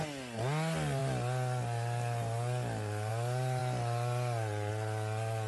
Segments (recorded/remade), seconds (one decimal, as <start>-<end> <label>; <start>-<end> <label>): 0.0-5.5 recorded